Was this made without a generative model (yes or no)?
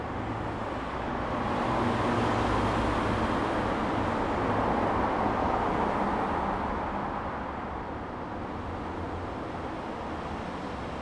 yes